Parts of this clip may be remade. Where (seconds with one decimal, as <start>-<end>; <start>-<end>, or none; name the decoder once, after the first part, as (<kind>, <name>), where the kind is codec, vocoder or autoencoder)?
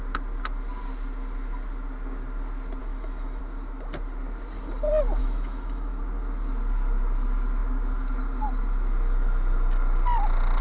2.8-3.4 (autoencoder, DAC-VAE); 5.2-6.0